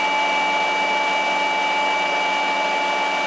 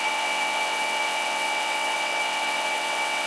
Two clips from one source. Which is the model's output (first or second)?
second